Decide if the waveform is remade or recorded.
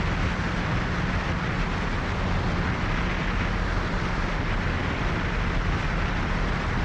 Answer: recorded